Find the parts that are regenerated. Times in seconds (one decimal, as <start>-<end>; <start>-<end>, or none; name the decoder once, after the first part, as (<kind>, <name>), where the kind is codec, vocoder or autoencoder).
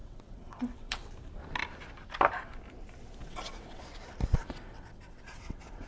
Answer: 0.0-1.1 (vocoder, WaveNeXt); 3.2-3.8; 4.4-5.9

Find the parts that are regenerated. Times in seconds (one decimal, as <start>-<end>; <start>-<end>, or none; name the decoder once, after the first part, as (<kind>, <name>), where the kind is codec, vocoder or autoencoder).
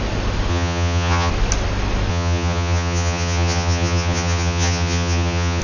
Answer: 0.5-1.3 (vocoder, HiFi-GAN); 2.1-5.6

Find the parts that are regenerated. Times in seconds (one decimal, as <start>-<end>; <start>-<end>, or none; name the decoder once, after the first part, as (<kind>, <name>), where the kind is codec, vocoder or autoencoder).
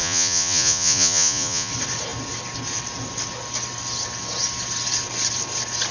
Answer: 0.0-1.7 (vocoder, Vocos)